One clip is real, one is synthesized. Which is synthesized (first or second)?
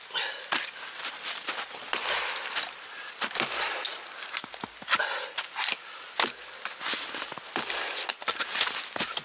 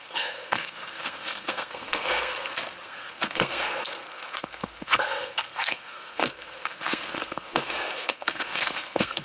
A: second